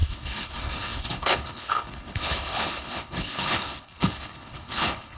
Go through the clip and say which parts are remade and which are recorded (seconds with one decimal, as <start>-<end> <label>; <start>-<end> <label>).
0.0-5.2 remade